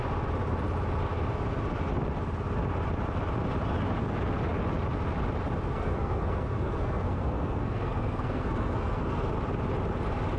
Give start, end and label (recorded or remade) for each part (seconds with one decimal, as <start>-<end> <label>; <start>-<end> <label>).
0.0-5.7 recorded; 5.7-9.3 remade; 9.3-10.4 recorded